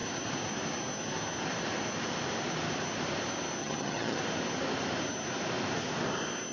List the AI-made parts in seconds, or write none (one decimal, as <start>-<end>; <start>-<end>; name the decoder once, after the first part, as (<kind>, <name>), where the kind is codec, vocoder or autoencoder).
3.6-4.2 (vocoder, HiFi-GAN)

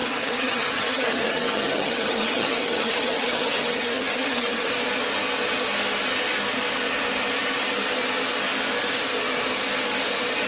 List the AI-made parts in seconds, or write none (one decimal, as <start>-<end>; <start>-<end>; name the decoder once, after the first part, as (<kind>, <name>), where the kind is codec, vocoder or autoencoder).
0.0-4.7 (vocoder, HiFi-GAN)

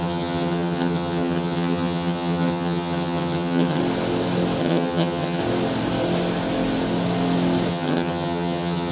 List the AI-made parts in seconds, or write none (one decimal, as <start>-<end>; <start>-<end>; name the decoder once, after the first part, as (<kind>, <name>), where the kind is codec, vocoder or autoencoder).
0.0-3.8 (vocoder, HiFi-GAN); 4.6-5.4; 7.7-8.9